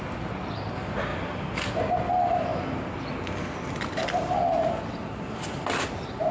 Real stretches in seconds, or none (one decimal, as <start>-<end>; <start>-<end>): 0.0-6.3